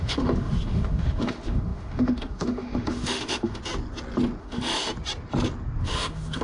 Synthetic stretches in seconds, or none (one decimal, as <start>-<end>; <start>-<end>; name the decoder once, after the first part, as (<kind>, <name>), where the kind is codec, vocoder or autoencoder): 0.0-3.6 (autoencoder, DAC-VAE); 4.4-4.9; 5.8-6.4